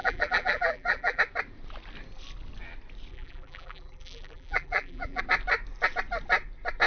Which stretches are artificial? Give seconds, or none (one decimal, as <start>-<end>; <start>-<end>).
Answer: 0.0-1.2; 3.1-5.2